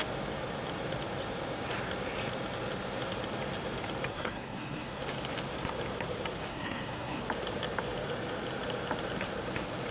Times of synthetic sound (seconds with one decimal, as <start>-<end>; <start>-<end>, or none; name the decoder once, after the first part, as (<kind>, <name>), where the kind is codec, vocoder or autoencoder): 4.1-5.0 (codec, SNAC); 6.5-7.2

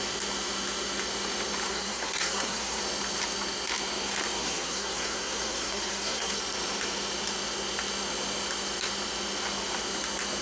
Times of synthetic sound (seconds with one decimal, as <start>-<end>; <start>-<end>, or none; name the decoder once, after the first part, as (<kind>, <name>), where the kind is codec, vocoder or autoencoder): 1.7-2.8 (codec, SNAC); 4.4-6.4